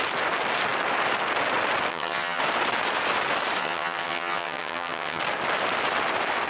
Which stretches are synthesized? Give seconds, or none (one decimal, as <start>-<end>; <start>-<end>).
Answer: 1.9-2.4; 3.6-5.2